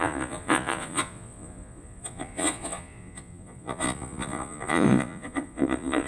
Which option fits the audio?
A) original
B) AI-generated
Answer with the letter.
B